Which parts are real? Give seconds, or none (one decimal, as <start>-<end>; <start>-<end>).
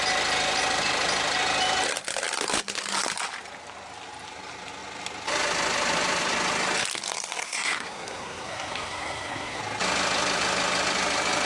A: 0.0-7.4; 9.6-11.5